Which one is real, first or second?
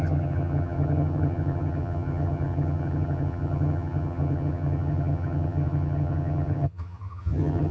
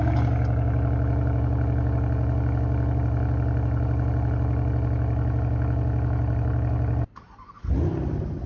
second